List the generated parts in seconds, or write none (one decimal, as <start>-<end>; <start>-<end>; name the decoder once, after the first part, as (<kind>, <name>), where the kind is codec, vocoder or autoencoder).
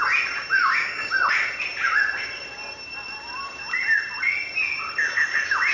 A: 0.6-1.1 (codec, DAC)